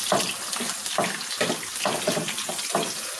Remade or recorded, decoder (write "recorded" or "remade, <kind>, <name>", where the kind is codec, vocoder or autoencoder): recorded